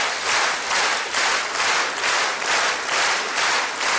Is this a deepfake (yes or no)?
no